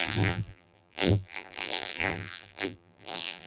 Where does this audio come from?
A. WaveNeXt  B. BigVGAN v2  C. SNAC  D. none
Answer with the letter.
B